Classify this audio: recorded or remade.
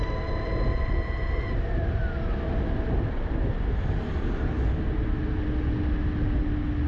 recorded